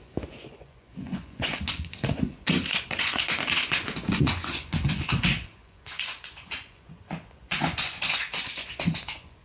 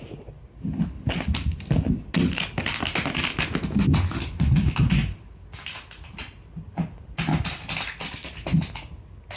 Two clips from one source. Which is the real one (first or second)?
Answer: second